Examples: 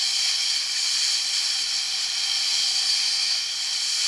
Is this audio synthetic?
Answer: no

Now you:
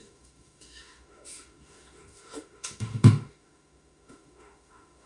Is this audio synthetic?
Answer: yes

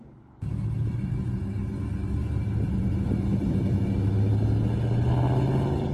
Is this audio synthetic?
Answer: no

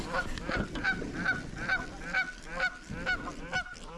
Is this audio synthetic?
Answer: no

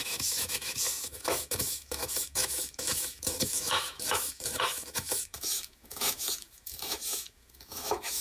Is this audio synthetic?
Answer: yes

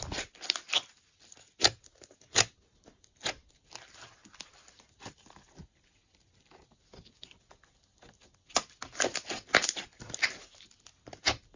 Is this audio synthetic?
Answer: no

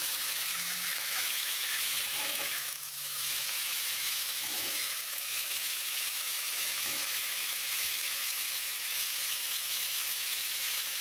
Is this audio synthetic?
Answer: yes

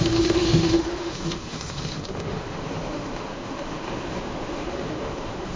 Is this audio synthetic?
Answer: yes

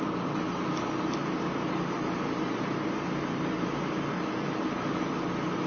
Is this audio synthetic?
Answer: no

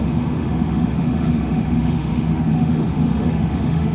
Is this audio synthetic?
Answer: yes